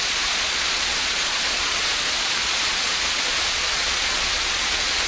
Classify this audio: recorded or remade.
remade